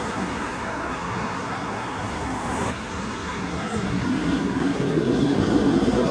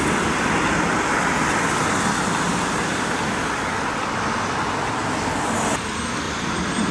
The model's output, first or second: first